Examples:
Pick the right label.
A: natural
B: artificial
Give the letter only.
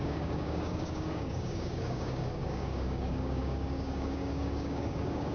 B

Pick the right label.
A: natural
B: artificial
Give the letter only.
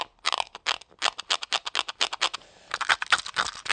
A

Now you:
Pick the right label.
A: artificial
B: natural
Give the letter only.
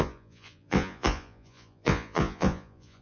A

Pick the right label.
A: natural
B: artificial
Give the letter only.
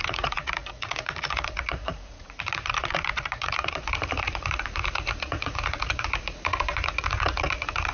B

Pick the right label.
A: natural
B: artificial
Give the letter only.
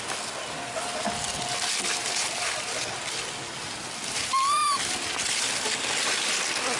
A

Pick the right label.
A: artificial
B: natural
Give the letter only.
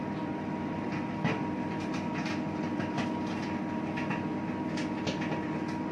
B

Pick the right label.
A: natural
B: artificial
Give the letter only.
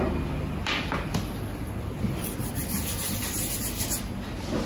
A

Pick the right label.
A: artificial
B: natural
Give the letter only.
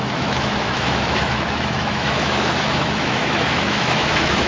A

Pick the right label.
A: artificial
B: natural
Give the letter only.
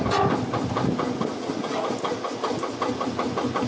B